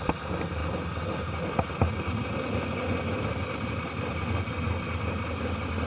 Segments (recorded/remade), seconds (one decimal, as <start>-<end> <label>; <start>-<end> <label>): 0.0-5.9 recorded